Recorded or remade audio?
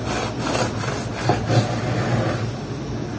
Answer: recorded